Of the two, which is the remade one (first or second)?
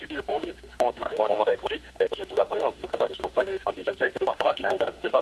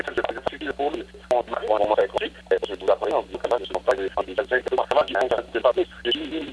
first